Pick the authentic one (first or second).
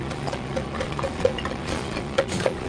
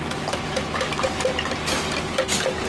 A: second